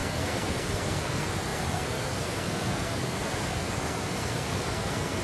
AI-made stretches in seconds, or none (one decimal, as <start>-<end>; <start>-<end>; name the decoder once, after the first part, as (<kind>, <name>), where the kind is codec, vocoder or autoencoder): 0.0-5.2 (codec, SNAC)

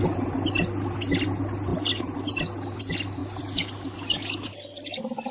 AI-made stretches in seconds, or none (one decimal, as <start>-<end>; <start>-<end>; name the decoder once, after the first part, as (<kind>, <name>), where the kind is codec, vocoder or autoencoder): none

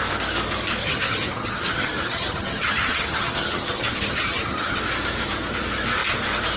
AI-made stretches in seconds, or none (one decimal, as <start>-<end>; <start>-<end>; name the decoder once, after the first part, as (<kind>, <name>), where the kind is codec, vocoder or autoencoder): 0.8-4.8 (vocoder, HiFi-GAN)

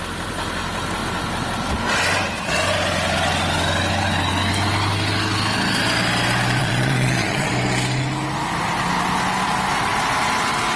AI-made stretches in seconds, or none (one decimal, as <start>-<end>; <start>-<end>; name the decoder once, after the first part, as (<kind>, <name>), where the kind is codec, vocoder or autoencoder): 6.6-7.5 (vocoder, Vocos)

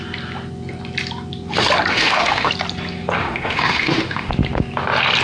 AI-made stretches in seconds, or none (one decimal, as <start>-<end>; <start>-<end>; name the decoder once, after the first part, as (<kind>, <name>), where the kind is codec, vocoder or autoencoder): 1.9-2.5 (autoencoder, DAC-VAE); 3.2-4.3

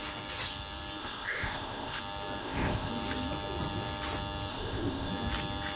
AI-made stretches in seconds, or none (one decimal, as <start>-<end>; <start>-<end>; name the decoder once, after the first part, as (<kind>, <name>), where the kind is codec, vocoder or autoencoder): 1.0-2.0 (codec, ZipCodec); 2.4-2.9; 4.5-5.1